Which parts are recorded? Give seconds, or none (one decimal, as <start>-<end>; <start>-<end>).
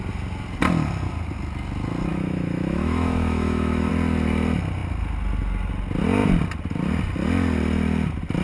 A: 0.0-2.1; 3.9-8.4